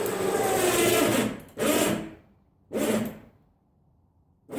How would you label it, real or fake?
real